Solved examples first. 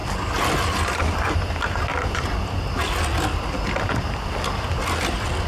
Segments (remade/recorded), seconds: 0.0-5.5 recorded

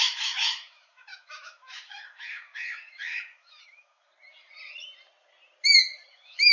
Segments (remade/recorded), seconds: 0.0-4.1 remade; 4.1-6.1 recorded; 6.1-6.5 remade

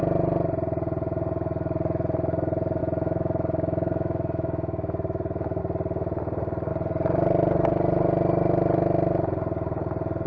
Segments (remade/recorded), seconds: 0.0-2.8 recorded; 2.8-5.6 remade; 5.6-10.3 recorded

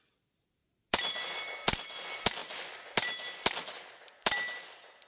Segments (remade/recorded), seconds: 0.0-5.1 recorded